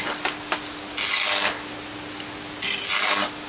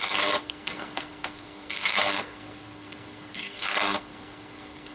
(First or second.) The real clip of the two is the first